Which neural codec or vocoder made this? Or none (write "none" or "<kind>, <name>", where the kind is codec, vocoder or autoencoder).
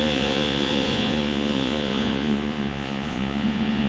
vocoder, Vocos